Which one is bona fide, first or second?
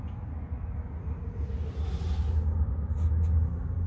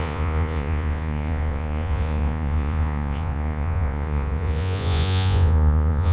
first